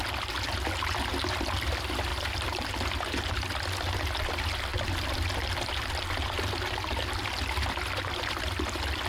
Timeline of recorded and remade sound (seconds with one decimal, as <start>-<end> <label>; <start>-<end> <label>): 0.0-2.1 recorded; 2.1-3.3 remade; 3.3-9.1 recorded